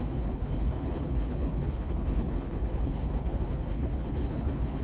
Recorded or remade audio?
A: remade